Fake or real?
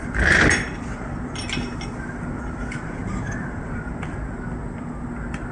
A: real